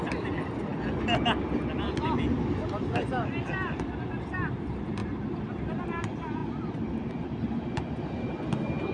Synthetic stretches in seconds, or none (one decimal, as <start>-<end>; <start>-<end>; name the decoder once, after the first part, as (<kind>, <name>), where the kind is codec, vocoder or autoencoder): 5.0-6.0 (vocoder, BigVGAN v2)